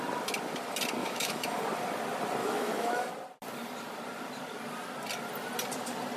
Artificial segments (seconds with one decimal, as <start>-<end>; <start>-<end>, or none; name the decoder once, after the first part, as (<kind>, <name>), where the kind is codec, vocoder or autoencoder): 1.0-1.6 (autoencoder, DAC-VAE); 2.4-3.1